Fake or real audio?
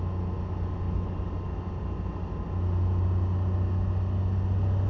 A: real